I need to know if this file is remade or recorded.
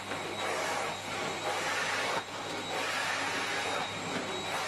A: recorded